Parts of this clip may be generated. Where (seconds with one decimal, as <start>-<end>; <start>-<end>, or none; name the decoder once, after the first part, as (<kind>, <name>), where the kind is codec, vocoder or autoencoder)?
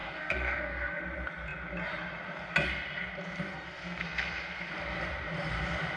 0.0-1.0 (codec, SNAC); 3.5-4.7